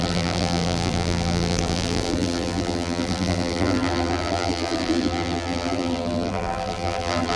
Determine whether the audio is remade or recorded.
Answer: remade